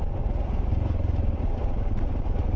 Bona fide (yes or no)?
yes